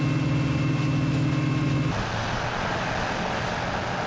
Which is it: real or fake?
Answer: real